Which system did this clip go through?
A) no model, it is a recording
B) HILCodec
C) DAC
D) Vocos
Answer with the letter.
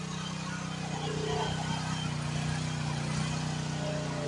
A